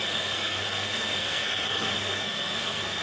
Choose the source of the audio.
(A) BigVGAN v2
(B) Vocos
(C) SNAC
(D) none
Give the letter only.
C